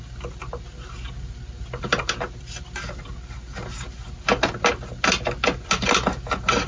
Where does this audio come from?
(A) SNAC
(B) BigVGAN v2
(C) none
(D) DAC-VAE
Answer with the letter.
C